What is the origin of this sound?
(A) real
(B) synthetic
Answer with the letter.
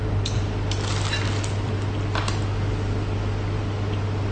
A